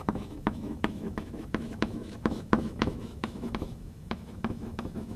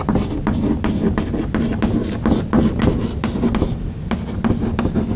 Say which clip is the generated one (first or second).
first